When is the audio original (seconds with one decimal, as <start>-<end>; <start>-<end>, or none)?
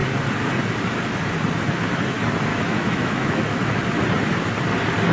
0.0-2.5; 3.8-5.1